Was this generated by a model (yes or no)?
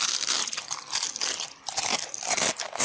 no